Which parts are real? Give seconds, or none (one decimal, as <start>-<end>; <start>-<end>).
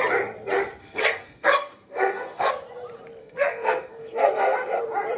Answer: 0.0-0.8; 2.5-3.2; 4.8-5.2